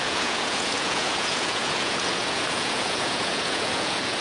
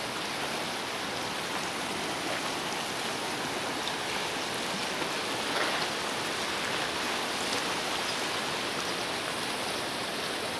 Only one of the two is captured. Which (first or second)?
second